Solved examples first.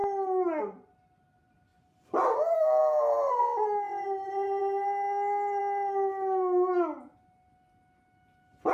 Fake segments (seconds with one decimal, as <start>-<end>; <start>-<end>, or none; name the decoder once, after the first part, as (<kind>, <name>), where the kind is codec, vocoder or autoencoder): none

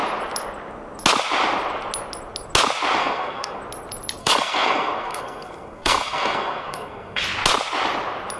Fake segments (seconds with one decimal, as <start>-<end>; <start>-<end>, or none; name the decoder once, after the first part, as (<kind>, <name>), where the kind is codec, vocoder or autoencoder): 3.0-3.6 (codec, SNAC); 4.2-7.2

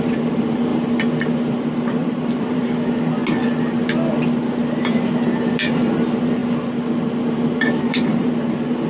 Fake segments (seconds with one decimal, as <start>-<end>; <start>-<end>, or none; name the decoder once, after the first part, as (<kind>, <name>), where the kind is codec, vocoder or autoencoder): 0.0-0.7 (vocoder, BigVGAN v2); 1.5-3.2; 5.7-6.4; 7.4-8.9

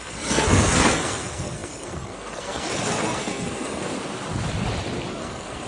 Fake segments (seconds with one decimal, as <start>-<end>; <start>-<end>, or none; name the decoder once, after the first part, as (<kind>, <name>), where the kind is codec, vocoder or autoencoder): 0.0-3.9 (codec, SNAC); 5.1-5.7

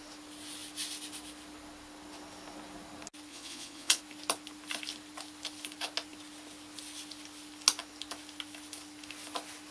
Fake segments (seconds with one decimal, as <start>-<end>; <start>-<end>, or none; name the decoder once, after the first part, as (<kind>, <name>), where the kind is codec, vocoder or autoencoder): 3.3-4.0 (vocoder, Vocos)

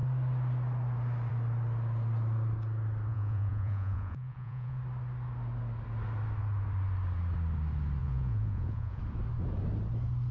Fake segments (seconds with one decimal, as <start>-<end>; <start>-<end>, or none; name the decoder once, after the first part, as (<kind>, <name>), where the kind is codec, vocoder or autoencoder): 3.1-4.8 (vocoder, Vocos); 8.0-9.0

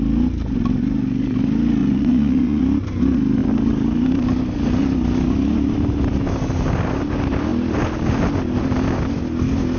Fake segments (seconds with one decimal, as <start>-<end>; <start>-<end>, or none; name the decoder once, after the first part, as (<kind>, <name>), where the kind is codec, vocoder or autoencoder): 1.8-2.6 (vocoder, Vocos)